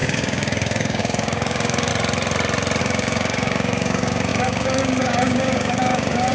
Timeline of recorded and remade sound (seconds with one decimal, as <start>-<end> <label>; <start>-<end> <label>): 0.0-1.9 remade; 1.9-2.8 recorded; 2.8-6.3 remade

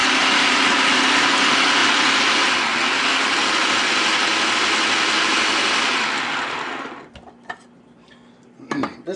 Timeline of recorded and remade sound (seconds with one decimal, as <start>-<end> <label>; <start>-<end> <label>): 0.0-1.3 remade; 1.3-9.2 recorded